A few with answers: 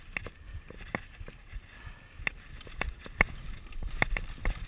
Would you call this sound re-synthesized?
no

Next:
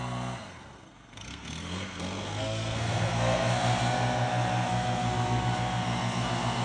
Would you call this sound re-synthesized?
yes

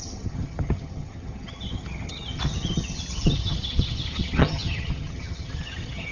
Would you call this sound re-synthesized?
yes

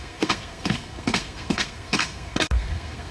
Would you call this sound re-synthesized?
yes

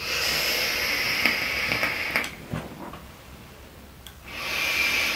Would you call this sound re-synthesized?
no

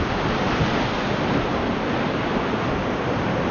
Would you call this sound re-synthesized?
no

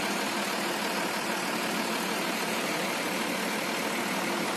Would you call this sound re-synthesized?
no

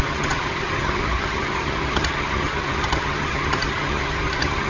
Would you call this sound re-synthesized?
yes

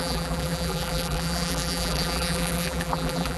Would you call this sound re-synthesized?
yes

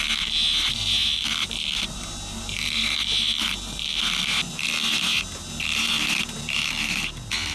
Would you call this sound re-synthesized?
no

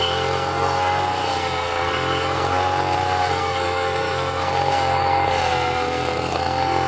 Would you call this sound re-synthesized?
yes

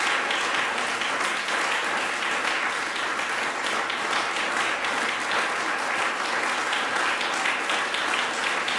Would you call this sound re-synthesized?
no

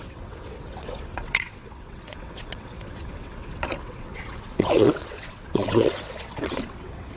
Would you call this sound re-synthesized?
yes